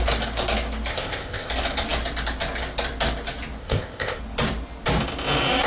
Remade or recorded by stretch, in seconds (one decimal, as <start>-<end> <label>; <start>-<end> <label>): 0.0-0.9 recorded; 0.9-1.5 remade; 1.5-3.6 recorded; 3.6-4.2 remade; 4.2-5.7 recorded